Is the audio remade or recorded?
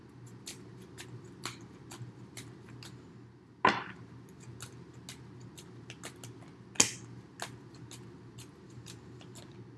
recorded